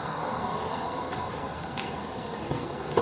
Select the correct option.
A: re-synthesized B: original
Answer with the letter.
A